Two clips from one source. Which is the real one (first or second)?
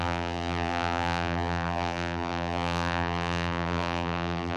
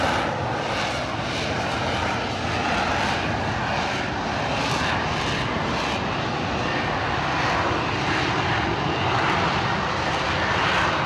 second